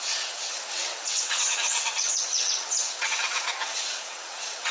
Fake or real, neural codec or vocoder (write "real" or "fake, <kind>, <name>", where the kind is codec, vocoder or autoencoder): fake, vocoder, WaveNeXt